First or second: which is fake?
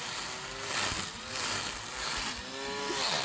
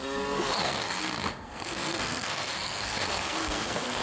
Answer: second